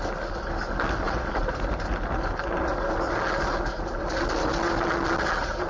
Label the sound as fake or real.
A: real